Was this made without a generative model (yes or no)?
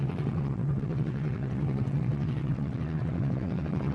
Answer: no